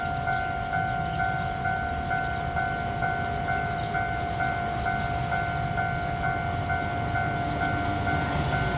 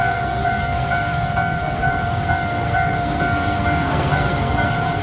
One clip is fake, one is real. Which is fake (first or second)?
second